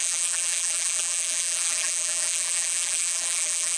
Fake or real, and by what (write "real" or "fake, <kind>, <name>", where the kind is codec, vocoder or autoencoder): fake, vocoder, BigVGAN v2